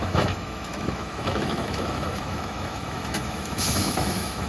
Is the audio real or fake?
fake